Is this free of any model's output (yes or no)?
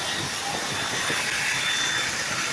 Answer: yes